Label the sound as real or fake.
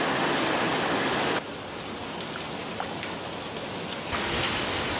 real